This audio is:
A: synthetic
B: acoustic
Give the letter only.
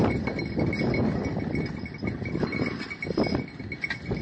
B